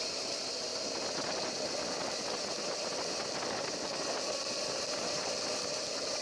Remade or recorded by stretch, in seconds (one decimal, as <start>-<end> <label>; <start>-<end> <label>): 0.0-0.7 remade; 0.7-4.4 recorded; 4.4-6.2 remade